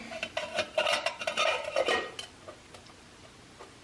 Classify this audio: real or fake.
real